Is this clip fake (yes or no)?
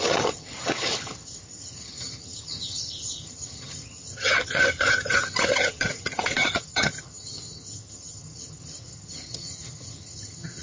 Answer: yes